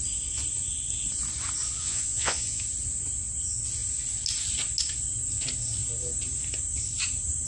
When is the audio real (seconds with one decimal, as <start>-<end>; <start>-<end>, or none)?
0.0-1.8; 2.6-7.5